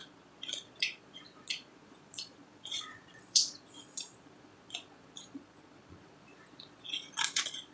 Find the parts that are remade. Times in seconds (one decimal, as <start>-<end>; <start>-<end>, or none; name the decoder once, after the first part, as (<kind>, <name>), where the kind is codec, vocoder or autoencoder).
0.0-7.7 (vocoder, Vocos)